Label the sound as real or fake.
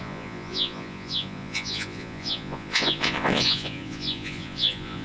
fake